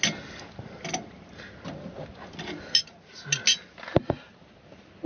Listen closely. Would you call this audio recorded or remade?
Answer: recorded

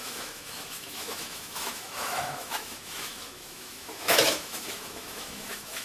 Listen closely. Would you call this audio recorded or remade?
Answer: remade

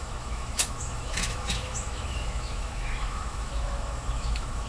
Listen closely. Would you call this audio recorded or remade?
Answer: remade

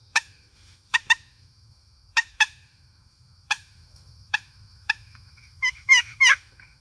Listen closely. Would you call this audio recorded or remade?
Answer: remade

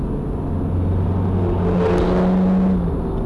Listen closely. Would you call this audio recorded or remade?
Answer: recorded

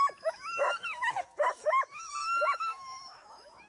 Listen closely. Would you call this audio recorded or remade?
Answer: remade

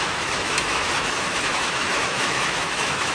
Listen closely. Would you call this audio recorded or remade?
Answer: remade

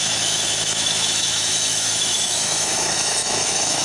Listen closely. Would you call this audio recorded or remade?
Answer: remade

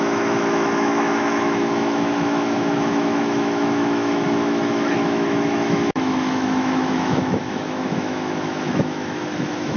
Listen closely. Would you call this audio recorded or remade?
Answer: remade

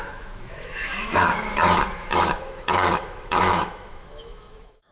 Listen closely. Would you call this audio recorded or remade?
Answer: remade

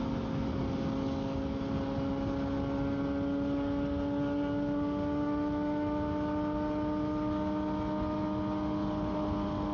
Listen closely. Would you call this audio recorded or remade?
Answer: recorded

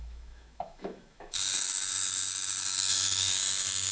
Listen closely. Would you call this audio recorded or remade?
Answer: remade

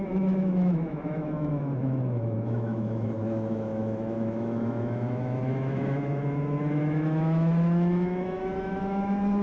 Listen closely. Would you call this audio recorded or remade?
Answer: remade